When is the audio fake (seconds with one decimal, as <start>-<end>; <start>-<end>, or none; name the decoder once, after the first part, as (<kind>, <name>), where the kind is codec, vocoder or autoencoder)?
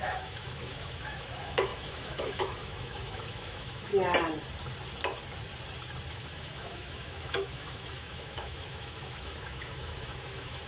0.0-3.9 (autoencoder, DAC-VAE); 6.1-10.7